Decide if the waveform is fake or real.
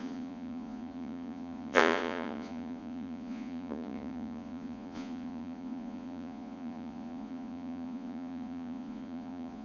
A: fake